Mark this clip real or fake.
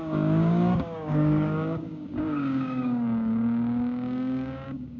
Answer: fake